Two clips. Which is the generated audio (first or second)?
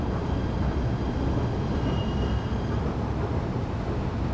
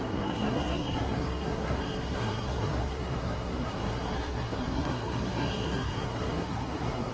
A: second